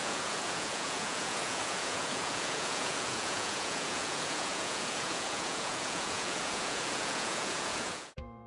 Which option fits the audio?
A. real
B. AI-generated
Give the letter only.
B